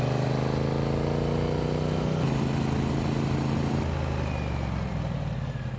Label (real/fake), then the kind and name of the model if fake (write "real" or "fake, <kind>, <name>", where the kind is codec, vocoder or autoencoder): real